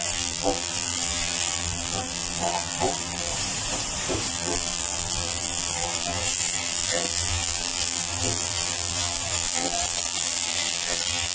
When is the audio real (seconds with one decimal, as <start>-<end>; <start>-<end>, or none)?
3.3-4.3